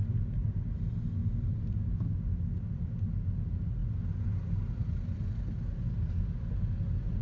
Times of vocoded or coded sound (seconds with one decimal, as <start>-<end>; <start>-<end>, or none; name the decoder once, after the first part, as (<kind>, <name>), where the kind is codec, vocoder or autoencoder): 0.4-1.0 (vocoder, BigVGAN v2)